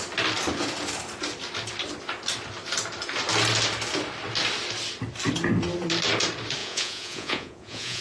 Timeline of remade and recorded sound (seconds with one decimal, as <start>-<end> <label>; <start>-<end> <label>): 0.0-6.6 recorded; 6.6-8.0 remade